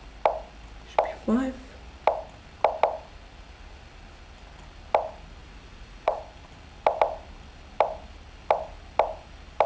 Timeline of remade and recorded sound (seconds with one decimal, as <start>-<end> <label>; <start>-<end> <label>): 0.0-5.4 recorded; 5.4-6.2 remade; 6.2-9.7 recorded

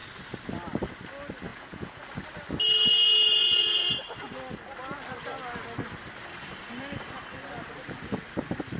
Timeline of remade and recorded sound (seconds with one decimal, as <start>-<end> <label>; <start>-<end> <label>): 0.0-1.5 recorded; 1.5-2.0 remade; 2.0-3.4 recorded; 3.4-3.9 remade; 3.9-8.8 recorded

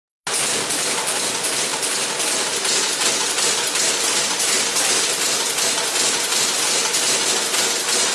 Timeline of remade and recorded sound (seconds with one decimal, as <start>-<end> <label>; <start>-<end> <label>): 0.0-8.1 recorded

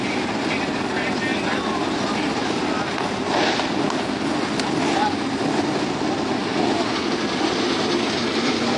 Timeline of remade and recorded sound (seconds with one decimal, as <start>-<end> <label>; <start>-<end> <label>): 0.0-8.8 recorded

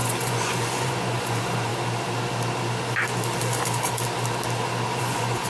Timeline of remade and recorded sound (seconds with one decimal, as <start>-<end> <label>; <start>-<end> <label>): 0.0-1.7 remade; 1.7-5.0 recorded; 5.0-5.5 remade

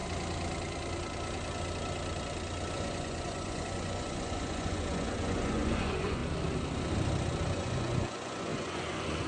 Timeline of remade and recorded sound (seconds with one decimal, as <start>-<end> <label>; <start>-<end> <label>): 0.0-2.7 recorded; 2.7-6.2 remade; 6.2-7.5 recorded; 7.5-9.3 remade